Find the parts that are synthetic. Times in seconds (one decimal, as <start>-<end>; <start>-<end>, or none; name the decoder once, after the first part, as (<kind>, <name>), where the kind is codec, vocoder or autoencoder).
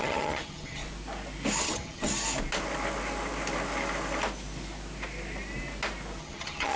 0.0-0.8 (vocoder, HiFi-GAN); 1.6-2.1; 6.2-6.8